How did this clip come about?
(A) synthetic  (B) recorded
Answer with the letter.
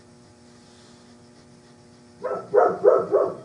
B